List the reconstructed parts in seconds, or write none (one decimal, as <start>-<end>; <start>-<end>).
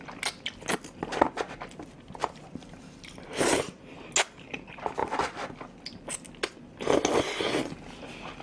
2.2-3.9